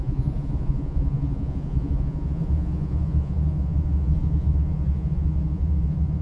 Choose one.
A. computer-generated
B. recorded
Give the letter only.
A